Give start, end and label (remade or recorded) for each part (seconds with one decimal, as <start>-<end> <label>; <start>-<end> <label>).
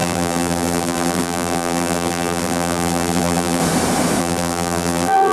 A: 0.0-3.6 remade; 3.6-4.2 recorded; 4.2-5.3 remade